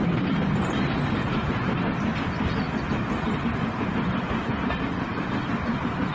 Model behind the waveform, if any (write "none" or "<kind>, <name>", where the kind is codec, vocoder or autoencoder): none